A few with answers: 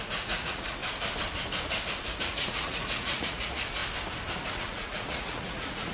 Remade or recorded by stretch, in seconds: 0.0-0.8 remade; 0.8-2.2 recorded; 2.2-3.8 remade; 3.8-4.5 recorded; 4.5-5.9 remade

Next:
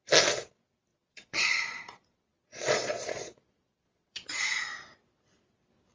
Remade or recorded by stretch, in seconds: 0.0-0.9 recorded; 0.9-4.4 remade; 4.4-5.9 recorded

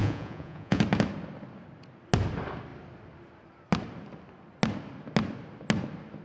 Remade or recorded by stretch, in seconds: 0.0-0.8 remade; 0.8-6.2 recorded